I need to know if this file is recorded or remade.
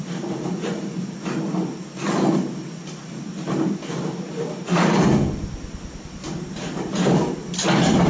recorded